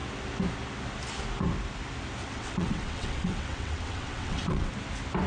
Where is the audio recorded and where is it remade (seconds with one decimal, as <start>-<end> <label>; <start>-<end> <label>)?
0.0-2.2 recorded; 2.2-4.7 remade; 4.7-5.3 recorded